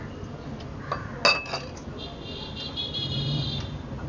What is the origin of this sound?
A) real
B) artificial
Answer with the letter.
A